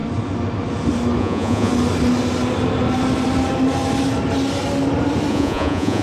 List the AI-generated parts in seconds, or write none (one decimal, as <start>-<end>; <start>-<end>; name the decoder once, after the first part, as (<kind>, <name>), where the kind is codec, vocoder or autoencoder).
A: 1.2-1.7 (vocoder, Vocos); 5.3-6.0